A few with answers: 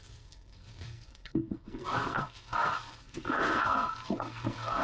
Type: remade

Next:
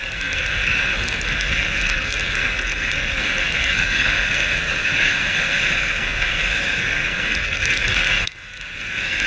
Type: remade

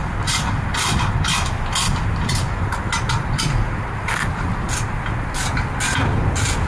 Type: recorded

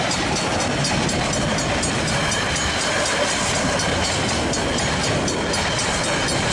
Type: recorded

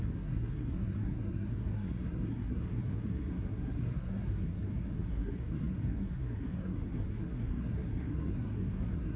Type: remade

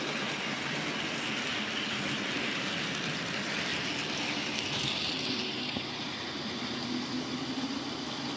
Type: recorded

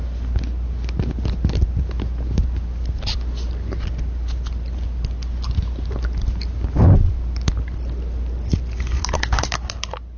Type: recorded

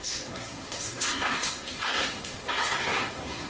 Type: remade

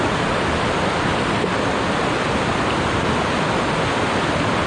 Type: recorded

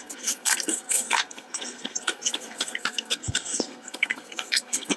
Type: remade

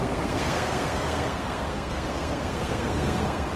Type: remade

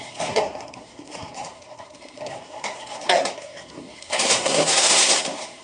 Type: remade